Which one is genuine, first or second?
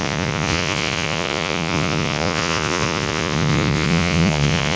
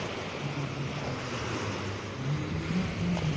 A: second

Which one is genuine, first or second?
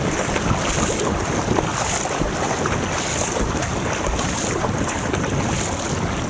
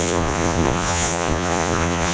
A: first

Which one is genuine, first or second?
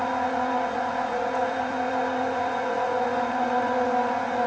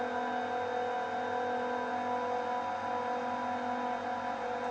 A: second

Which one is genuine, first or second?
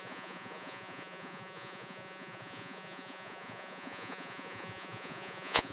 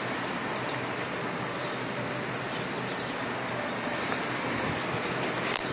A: second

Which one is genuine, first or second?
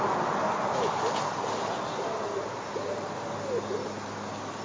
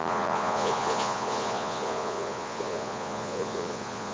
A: first